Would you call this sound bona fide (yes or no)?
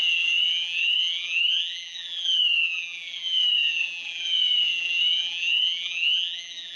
no